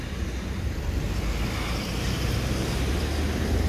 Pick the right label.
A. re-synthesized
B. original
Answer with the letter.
B